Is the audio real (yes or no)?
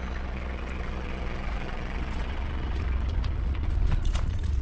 no